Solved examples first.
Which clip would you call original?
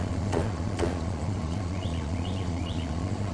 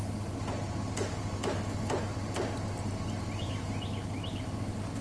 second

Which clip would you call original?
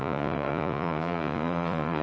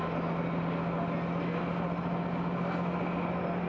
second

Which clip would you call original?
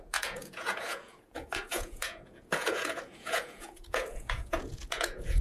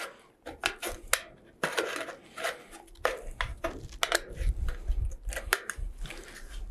second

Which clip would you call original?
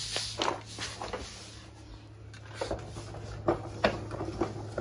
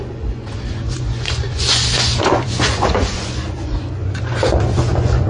first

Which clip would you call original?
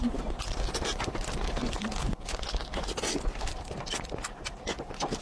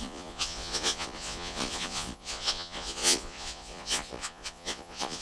first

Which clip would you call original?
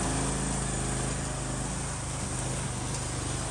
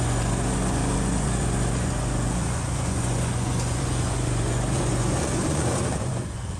first